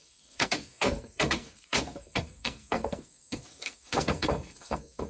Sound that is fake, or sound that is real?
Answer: fake